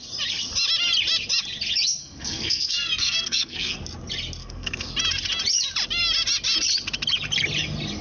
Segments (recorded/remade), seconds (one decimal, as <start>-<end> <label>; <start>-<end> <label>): 0.0-2.0 recorded; 2.0-3.8 remade; 3.8-4.4 recorded; 4.4-4.9 remade; 4.9-8.0 recorded